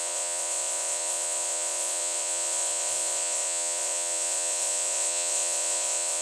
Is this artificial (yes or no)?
yes